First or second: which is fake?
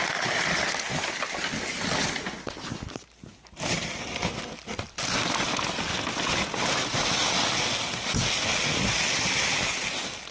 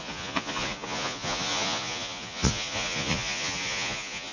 second